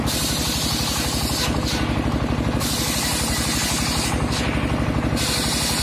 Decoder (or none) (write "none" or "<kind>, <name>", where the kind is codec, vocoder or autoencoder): none